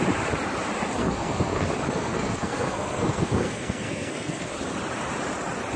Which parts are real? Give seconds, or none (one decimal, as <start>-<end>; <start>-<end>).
0.0-1.0; 4.5-5.8